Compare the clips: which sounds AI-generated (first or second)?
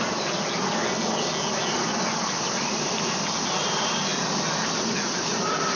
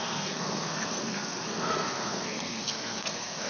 second